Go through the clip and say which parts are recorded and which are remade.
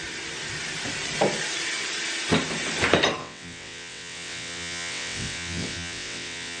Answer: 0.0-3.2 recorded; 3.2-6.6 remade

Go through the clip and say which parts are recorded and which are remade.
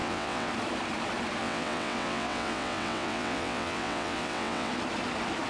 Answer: 0.0-0.5 remade; 0.5-1.4 recorded; 1.4-4.7 remade; 4.7-5.5 recorded